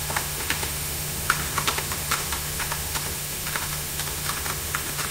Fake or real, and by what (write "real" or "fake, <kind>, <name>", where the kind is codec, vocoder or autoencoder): fake, autoencoder, DAC-VAE